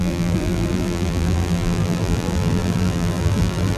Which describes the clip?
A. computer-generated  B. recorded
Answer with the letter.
A